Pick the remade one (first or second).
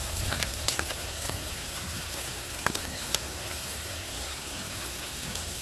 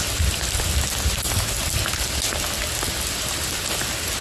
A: first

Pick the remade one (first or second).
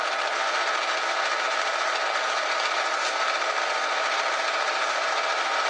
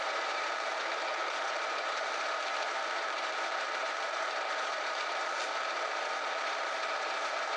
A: second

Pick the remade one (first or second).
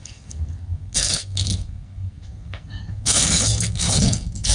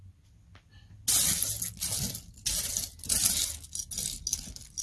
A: first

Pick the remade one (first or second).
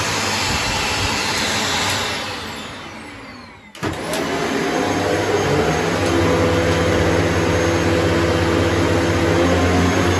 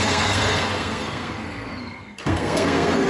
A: second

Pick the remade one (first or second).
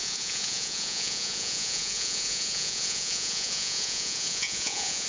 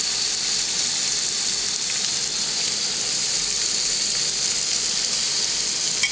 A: first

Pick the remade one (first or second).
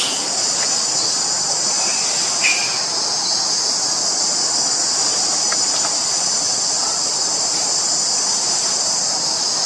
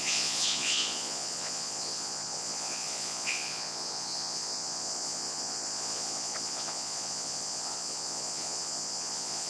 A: second